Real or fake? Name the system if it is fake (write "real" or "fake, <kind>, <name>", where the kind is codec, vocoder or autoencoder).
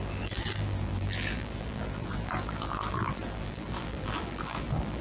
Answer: fake, vocoder, BigVGAN v2